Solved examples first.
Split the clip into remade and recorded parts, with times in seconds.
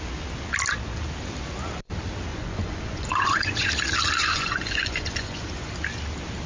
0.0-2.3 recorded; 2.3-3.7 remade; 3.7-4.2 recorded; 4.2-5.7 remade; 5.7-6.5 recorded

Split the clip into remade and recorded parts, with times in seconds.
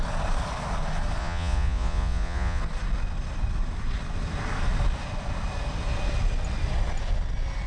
0.0-1.2 recorded; 1.2-2.6 remade; 2.6-7.7 recorded